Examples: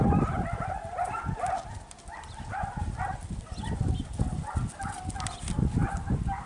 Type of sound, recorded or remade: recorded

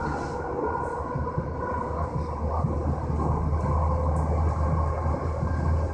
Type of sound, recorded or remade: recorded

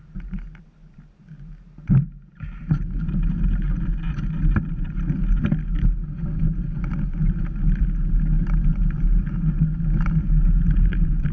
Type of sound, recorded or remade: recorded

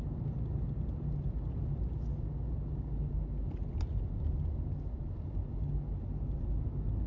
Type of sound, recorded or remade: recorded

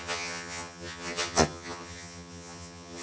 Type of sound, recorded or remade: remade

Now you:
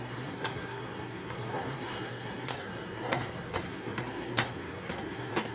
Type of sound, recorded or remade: remade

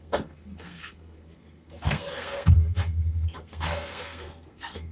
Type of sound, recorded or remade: remade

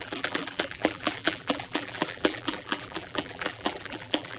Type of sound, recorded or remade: remade